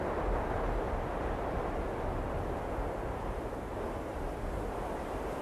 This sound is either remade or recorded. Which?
recorded